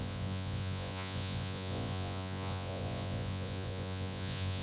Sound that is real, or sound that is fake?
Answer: fake